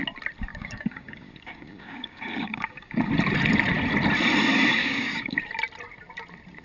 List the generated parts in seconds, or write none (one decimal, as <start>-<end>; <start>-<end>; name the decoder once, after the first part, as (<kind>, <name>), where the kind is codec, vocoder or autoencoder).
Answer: 0.5-3.1 (codec, DAC); 4.8-5.4